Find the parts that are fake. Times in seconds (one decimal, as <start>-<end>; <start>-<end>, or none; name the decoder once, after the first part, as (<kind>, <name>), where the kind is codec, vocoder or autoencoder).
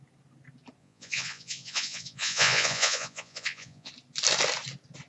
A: 0.8-3.9 (vocoder, Vocos)